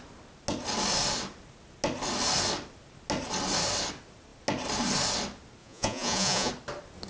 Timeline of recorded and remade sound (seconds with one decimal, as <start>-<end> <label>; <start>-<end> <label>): 0.0-5.6 recorded; 5.6-6.5 remade; 6.5-7.1 recorded